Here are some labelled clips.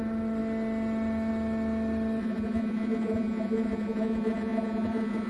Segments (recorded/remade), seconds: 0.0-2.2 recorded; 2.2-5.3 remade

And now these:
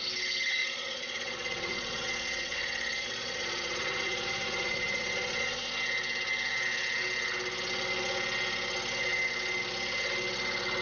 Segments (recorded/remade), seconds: 0.0-0.6 recorded; 0.6-5.7 remade; 5.7-10.8 recorded

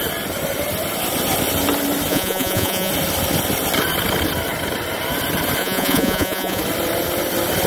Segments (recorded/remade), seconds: 0.0-2.1 recorded; 2.1-2.9 remade; 2.9-5.6 recorded; 5.6-6.6 remade; 6.6-7.7 recorded

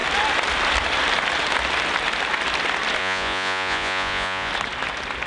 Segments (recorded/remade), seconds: 0.0-3.0 recorded; 3.0-4.5 remade; 4.5-5.3 recorded

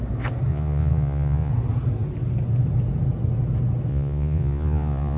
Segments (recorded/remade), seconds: 0.0-0.5 recorded; 0.5-1.5 remade; 1.5-3.9 recorded; 3.9-5.2 remade

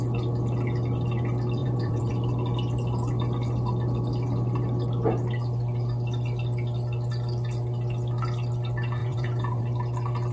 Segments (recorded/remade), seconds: 0.0-1.6 recorded; 1.6-2.1 remade; 2.1-9.0 recorded; 9.0-9.6 remade; 9.6-10.3 recorded

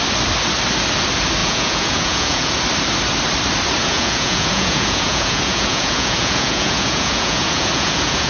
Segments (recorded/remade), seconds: 0.0-1.4 recorded; 1.4-2.5 remade; 2.5-3.8 recorded; 3.8-8.3 remade